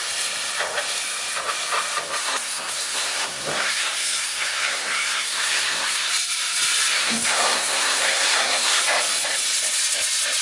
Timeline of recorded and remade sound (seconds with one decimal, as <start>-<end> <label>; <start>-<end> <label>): 0.0-2.2 recorded; 2.2-6.1 remade; 6.1-6.9 recorded; 6.9-8.8 remade; 8.8-10.4 recorded

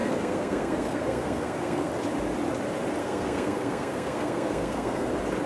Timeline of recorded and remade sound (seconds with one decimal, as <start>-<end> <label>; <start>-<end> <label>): 0.0-1.9 remade; 1.9-3.0 recorded; 3.0-5.1 remade; 5.1-5.5 recorded

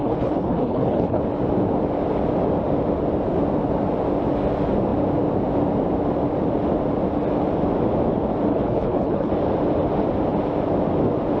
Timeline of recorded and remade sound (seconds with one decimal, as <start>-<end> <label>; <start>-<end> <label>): 0.0-1.2 remade; 1.2-8.5 recorded; 8.5-9.3 remade; 9.3-11.4 recorded

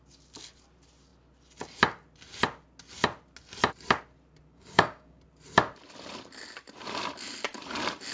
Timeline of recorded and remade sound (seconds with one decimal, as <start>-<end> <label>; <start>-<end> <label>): 0.0-4.5 recorded; 4.5-5.2 remade; 5.2-8.1 recorded

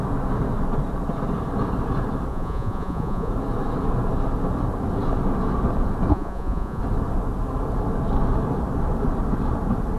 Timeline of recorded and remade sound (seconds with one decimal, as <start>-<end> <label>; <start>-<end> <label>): 0.0-2.3 recorded; 2.3-3.3 remade; 3.3-6.1 recorded; 6.1-6.8 remade; 6.8-10.0 recorded

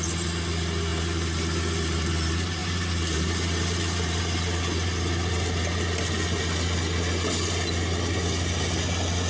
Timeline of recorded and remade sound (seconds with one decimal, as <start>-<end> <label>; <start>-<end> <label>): 0.0-0.9 recorded; 0.9-2.1 remade; 2.1-2.6 recorded; 2.6-4.2 remade; 4.2-9.3 recorded

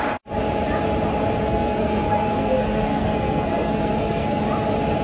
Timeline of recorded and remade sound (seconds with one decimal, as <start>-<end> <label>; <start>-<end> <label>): 0.0-1.4 recorded; 1.4-4.4 remade; 4.4-5.0 recorded